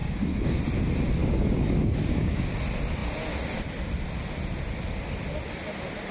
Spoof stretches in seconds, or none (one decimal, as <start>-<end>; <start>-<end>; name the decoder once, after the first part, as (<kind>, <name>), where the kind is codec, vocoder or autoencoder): 0.0-0.6 (codec, DAC); 1.2-2.5

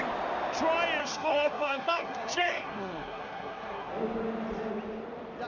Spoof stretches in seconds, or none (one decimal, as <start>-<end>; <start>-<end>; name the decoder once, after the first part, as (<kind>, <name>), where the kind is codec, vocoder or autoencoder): 1.0-3.9 (codec, SNAC)

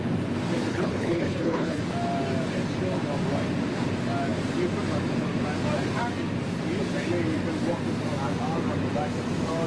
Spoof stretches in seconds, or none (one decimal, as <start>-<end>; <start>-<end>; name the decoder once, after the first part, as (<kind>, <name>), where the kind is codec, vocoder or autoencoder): 0.7-1.8 (codec, HILCodec)

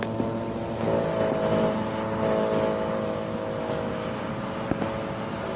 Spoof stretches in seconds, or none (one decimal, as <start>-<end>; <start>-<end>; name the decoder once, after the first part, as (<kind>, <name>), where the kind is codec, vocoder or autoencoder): 2.7-3.9 (autoencoder, DAC-VAE)

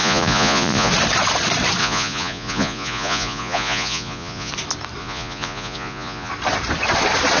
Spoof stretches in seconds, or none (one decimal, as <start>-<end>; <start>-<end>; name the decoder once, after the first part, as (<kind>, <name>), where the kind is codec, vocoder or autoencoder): 0.0-0.9 (vocoder, Vocos); 1.8-4.5; 5.0-6.3